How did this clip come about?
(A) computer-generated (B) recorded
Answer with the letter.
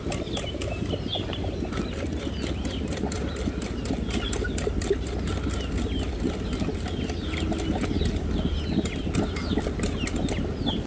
B